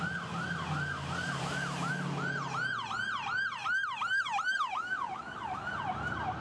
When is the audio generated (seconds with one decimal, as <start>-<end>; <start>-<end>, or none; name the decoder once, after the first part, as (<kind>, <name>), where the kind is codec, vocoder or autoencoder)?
1.0-1.9 (vocoder, BigVGAN v2); 3.6-5.8